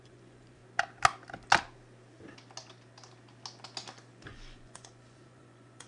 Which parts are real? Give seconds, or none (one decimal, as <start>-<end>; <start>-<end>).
0.6-4.1